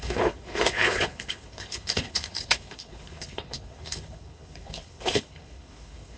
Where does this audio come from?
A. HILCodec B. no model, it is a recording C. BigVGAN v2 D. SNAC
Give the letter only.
A